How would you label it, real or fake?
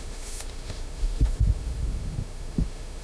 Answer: fake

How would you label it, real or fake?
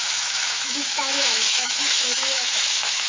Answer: fake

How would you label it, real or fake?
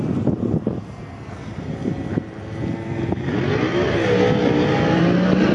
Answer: real